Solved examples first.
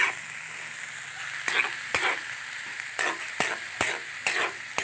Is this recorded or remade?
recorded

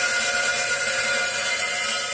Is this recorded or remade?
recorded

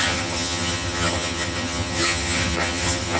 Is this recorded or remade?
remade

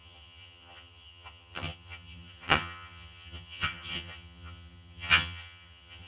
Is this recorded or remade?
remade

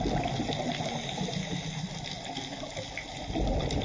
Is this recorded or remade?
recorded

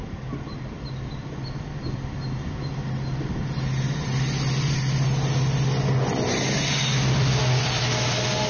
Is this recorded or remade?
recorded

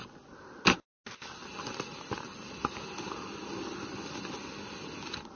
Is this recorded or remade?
recorded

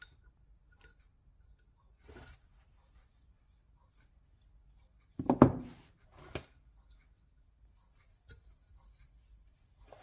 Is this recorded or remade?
recorded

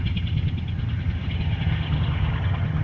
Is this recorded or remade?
remade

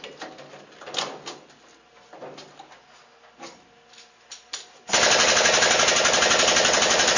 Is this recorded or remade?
recorded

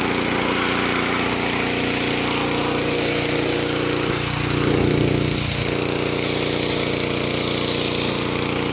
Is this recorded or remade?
recorded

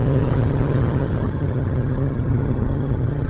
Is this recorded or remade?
remade